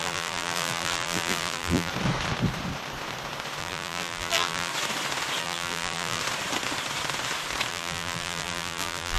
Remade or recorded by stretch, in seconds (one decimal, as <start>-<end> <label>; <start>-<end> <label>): 0.0-1.9 remade; 1.9-3.6 recorded; 3.6-4.7 remade; 4.7-5.4 recorded; 5.4-6.2 remade; 6.2-7.7 recorded; 7.7-9.2 remade